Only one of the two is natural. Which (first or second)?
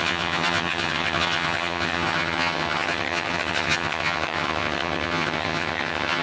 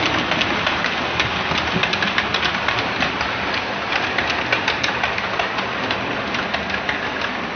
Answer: second